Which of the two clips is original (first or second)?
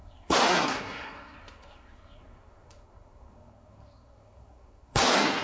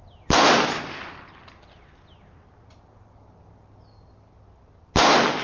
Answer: second